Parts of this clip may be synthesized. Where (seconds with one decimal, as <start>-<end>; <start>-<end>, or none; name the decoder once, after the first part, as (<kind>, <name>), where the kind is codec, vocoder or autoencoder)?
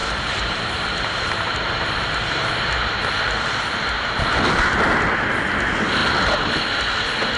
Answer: 0.0-4.4 (vocoder, BigVGAN v2)